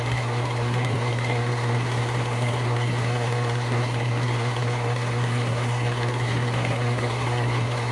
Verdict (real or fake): fake